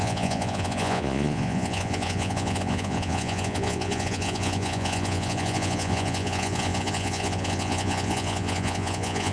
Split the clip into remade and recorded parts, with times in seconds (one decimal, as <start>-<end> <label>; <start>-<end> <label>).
0.0-9.3 remade